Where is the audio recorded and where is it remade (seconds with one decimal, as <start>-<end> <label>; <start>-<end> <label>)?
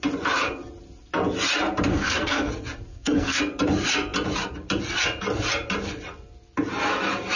0.0-1.9 recorded; 1.9-2.5 remade; 2.5-2.9 recorded; 2.9-3.4 remade; 3.4-7.4 recorded